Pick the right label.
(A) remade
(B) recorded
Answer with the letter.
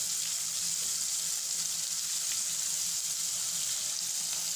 B